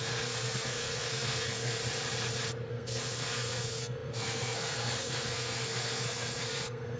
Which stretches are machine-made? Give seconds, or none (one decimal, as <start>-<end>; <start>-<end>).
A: 0.0-1.8; 2.7-7.0